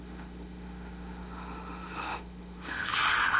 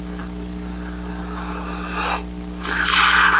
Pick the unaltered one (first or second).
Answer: second